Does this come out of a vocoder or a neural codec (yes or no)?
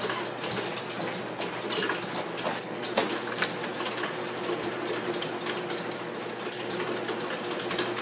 no